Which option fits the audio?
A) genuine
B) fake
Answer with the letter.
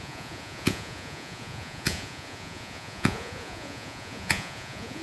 B